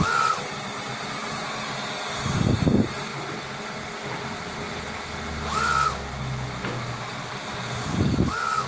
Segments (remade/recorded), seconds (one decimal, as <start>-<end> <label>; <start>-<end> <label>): 0.0-8.7 recorded